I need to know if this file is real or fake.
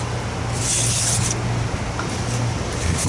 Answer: real